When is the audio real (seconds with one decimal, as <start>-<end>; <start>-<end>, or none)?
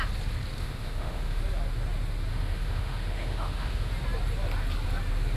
0.0-0.6; 1.4-2.3; 3.9-5.4